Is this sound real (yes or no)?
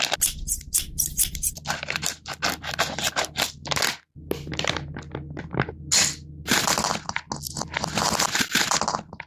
yes